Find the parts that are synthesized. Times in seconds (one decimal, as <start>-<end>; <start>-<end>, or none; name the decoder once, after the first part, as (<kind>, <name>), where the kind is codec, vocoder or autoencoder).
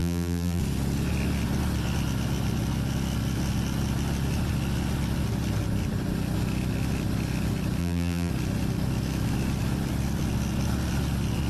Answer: 0.0-0.6 (vocoder, BigVGAN v2); 7.8-8.3